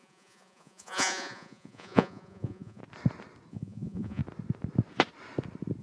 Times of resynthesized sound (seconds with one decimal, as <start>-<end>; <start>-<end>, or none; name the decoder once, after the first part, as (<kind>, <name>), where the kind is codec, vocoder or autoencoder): 0.0-2.8 (vocoder, Vocos); 3.5-4.2